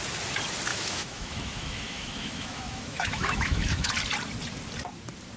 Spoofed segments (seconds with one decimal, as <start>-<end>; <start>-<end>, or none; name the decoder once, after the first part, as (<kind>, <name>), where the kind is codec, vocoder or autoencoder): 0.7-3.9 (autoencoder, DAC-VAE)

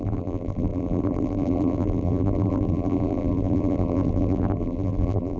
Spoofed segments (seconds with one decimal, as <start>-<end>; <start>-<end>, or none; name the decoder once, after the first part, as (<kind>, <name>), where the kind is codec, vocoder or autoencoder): 0.0-5.4 (vocoder, BigVGAN v2)

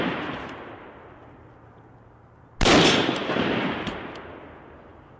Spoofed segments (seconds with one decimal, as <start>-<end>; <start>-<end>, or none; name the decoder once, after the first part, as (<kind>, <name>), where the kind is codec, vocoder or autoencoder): 3.0-4.1 (vocoder, BigVGAN v2)